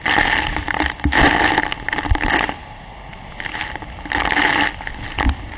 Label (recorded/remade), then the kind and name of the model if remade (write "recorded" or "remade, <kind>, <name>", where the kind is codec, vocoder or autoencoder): recorded